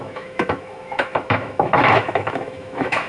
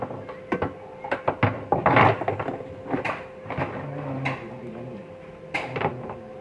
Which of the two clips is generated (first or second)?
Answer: first